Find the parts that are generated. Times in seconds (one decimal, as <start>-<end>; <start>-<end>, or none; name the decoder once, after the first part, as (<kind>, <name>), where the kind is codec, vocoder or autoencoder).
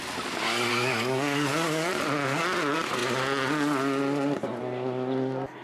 0.7-1.9 (codec, DAC)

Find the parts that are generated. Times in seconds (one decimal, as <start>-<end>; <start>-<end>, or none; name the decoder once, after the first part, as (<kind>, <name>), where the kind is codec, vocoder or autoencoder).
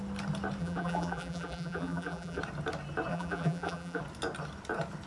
0.6-2.4 (vocoder, BigVGAN v2); 3.1-4.0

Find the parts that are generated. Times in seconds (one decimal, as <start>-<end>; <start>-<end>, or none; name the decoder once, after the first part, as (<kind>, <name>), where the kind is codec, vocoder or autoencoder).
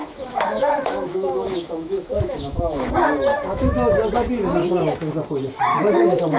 0.0-2.9 (autoencoder, DAC-VAE); 3.3-3.9; 4.6-5.1; 5.7-6.4